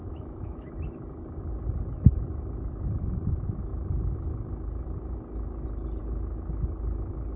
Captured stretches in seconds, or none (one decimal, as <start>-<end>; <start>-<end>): 0.7-7.4